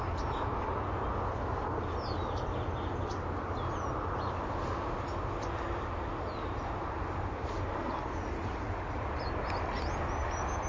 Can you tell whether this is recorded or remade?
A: recorded